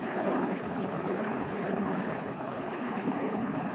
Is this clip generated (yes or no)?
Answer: yes